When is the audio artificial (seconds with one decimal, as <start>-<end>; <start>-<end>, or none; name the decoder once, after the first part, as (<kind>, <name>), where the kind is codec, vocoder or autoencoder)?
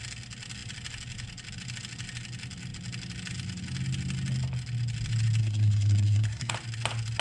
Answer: 5.4-6.5 (codec, SNAC)